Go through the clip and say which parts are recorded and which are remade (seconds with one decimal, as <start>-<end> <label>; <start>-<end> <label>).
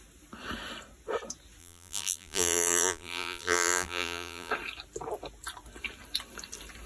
0.0-1.6 recorded; 1.6-4.5 remade; 4.5-6.9 recorded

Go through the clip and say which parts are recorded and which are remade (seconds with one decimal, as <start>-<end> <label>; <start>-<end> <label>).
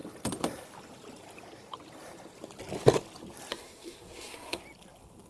0.0-3.5 recorded; 3.5-4.6 remade; 4.6-5.3 recorded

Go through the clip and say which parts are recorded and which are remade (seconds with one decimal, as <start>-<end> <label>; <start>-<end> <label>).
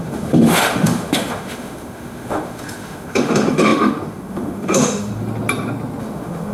0.0-5.1 remade; 5.1-6.0 recorded; 6.0-6.5 remade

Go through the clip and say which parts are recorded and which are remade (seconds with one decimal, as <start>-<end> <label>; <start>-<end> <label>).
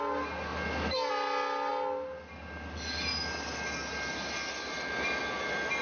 0.0-5.8 recorded